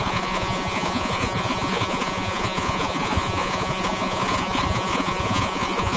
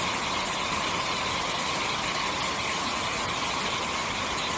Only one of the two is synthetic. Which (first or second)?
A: first